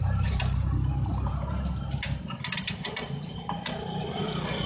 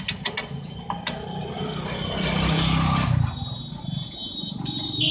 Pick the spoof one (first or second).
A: first